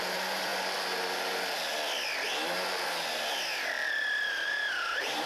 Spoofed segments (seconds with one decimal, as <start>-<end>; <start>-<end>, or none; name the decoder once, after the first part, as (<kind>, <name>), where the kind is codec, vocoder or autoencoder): 0.0-0.5 (vocoder, BigVGAN v2); 3.7-5.3